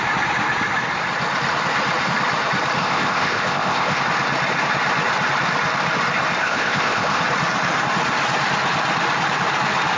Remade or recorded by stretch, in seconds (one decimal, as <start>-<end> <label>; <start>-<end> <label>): 0.0-2.8 recorded; 2.8-4.0 remade; 4.0-6.4 recorded; 6.4-7.2 remade; 7.2-10.0 recorded